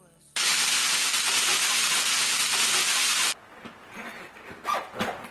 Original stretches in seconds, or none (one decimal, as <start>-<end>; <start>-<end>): 0.0-5.3

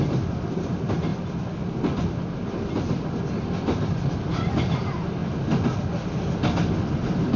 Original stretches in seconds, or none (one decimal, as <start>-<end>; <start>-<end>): 1.1-4.1; 5.2-6.9

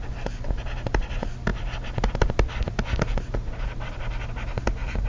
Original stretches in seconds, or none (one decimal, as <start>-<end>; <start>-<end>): 0.0-5.1

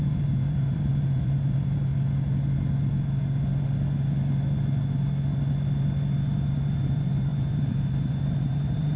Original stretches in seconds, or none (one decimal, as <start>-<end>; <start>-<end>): 1.9-6.8

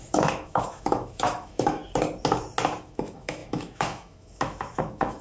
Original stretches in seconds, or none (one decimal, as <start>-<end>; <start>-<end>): 1.8-2.8

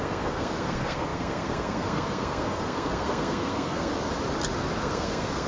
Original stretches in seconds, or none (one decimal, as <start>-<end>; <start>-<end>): 3.9-4.8

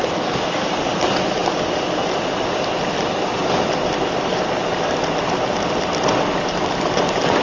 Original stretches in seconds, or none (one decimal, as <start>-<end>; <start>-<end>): 0.0-7.4

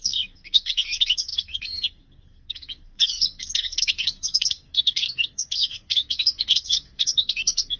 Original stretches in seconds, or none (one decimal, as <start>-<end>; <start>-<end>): none